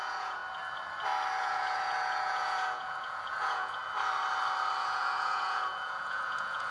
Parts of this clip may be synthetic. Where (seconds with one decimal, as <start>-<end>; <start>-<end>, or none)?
0.0-0.4; 1.4-3.8; 4.8-6.7